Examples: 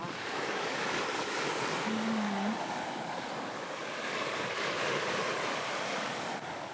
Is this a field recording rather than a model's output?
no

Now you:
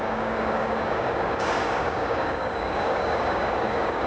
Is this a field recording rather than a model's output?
no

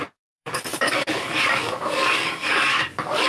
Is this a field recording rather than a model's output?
no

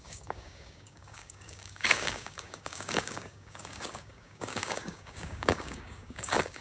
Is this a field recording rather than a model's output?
no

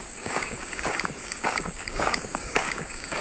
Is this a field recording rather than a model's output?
no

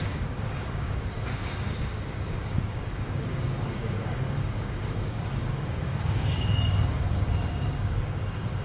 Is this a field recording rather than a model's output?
no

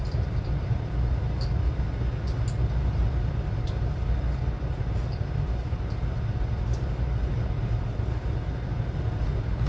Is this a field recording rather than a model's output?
yes